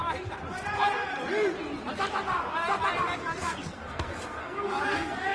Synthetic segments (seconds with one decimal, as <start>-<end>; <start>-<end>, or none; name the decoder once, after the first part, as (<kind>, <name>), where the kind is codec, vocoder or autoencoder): 3.2-5.3 (codec, SNAC)